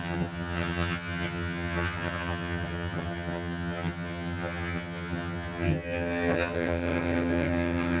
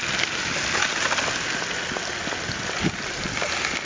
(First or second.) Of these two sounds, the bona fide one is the second